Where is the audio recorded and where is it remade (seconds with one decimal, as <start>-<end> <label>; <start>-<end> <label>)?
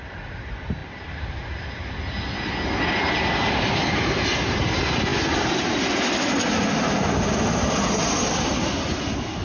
0.0-5.1 recorded; 5.1-6.3 remade; 6.3-9.4 recorded